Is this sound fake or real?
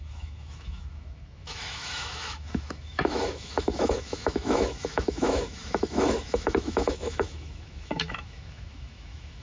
fake